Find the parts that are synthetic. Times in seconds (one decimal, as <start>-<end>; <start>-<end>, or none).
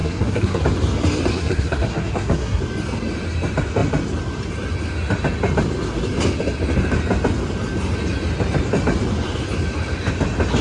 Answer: 0.0-0.6; 1.3-2.6